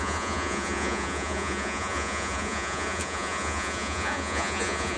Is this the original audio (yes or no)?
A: no